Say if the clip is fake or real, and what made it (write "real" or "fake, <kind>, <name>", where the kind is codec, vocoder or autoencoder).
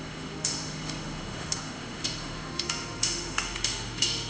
fake, autoencoder, DAC-VAE